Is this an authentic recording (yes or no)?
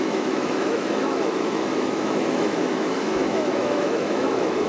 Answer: no